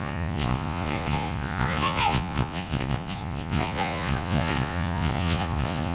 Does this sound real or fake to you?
fake